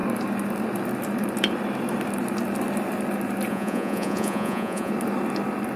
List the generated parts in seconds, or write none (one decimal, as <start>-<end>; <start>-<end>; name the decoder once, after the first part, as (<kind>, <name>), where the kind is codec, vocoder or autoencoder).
3.5-4.9 (vocoder, Vocos)